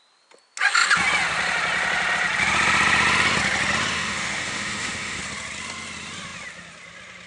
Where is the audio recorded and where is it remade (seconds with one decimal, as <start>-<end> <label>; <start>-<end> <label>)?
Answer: 0.0-3.9 recorded; 3.9-5.2 remade; 5.2-7.3 recorded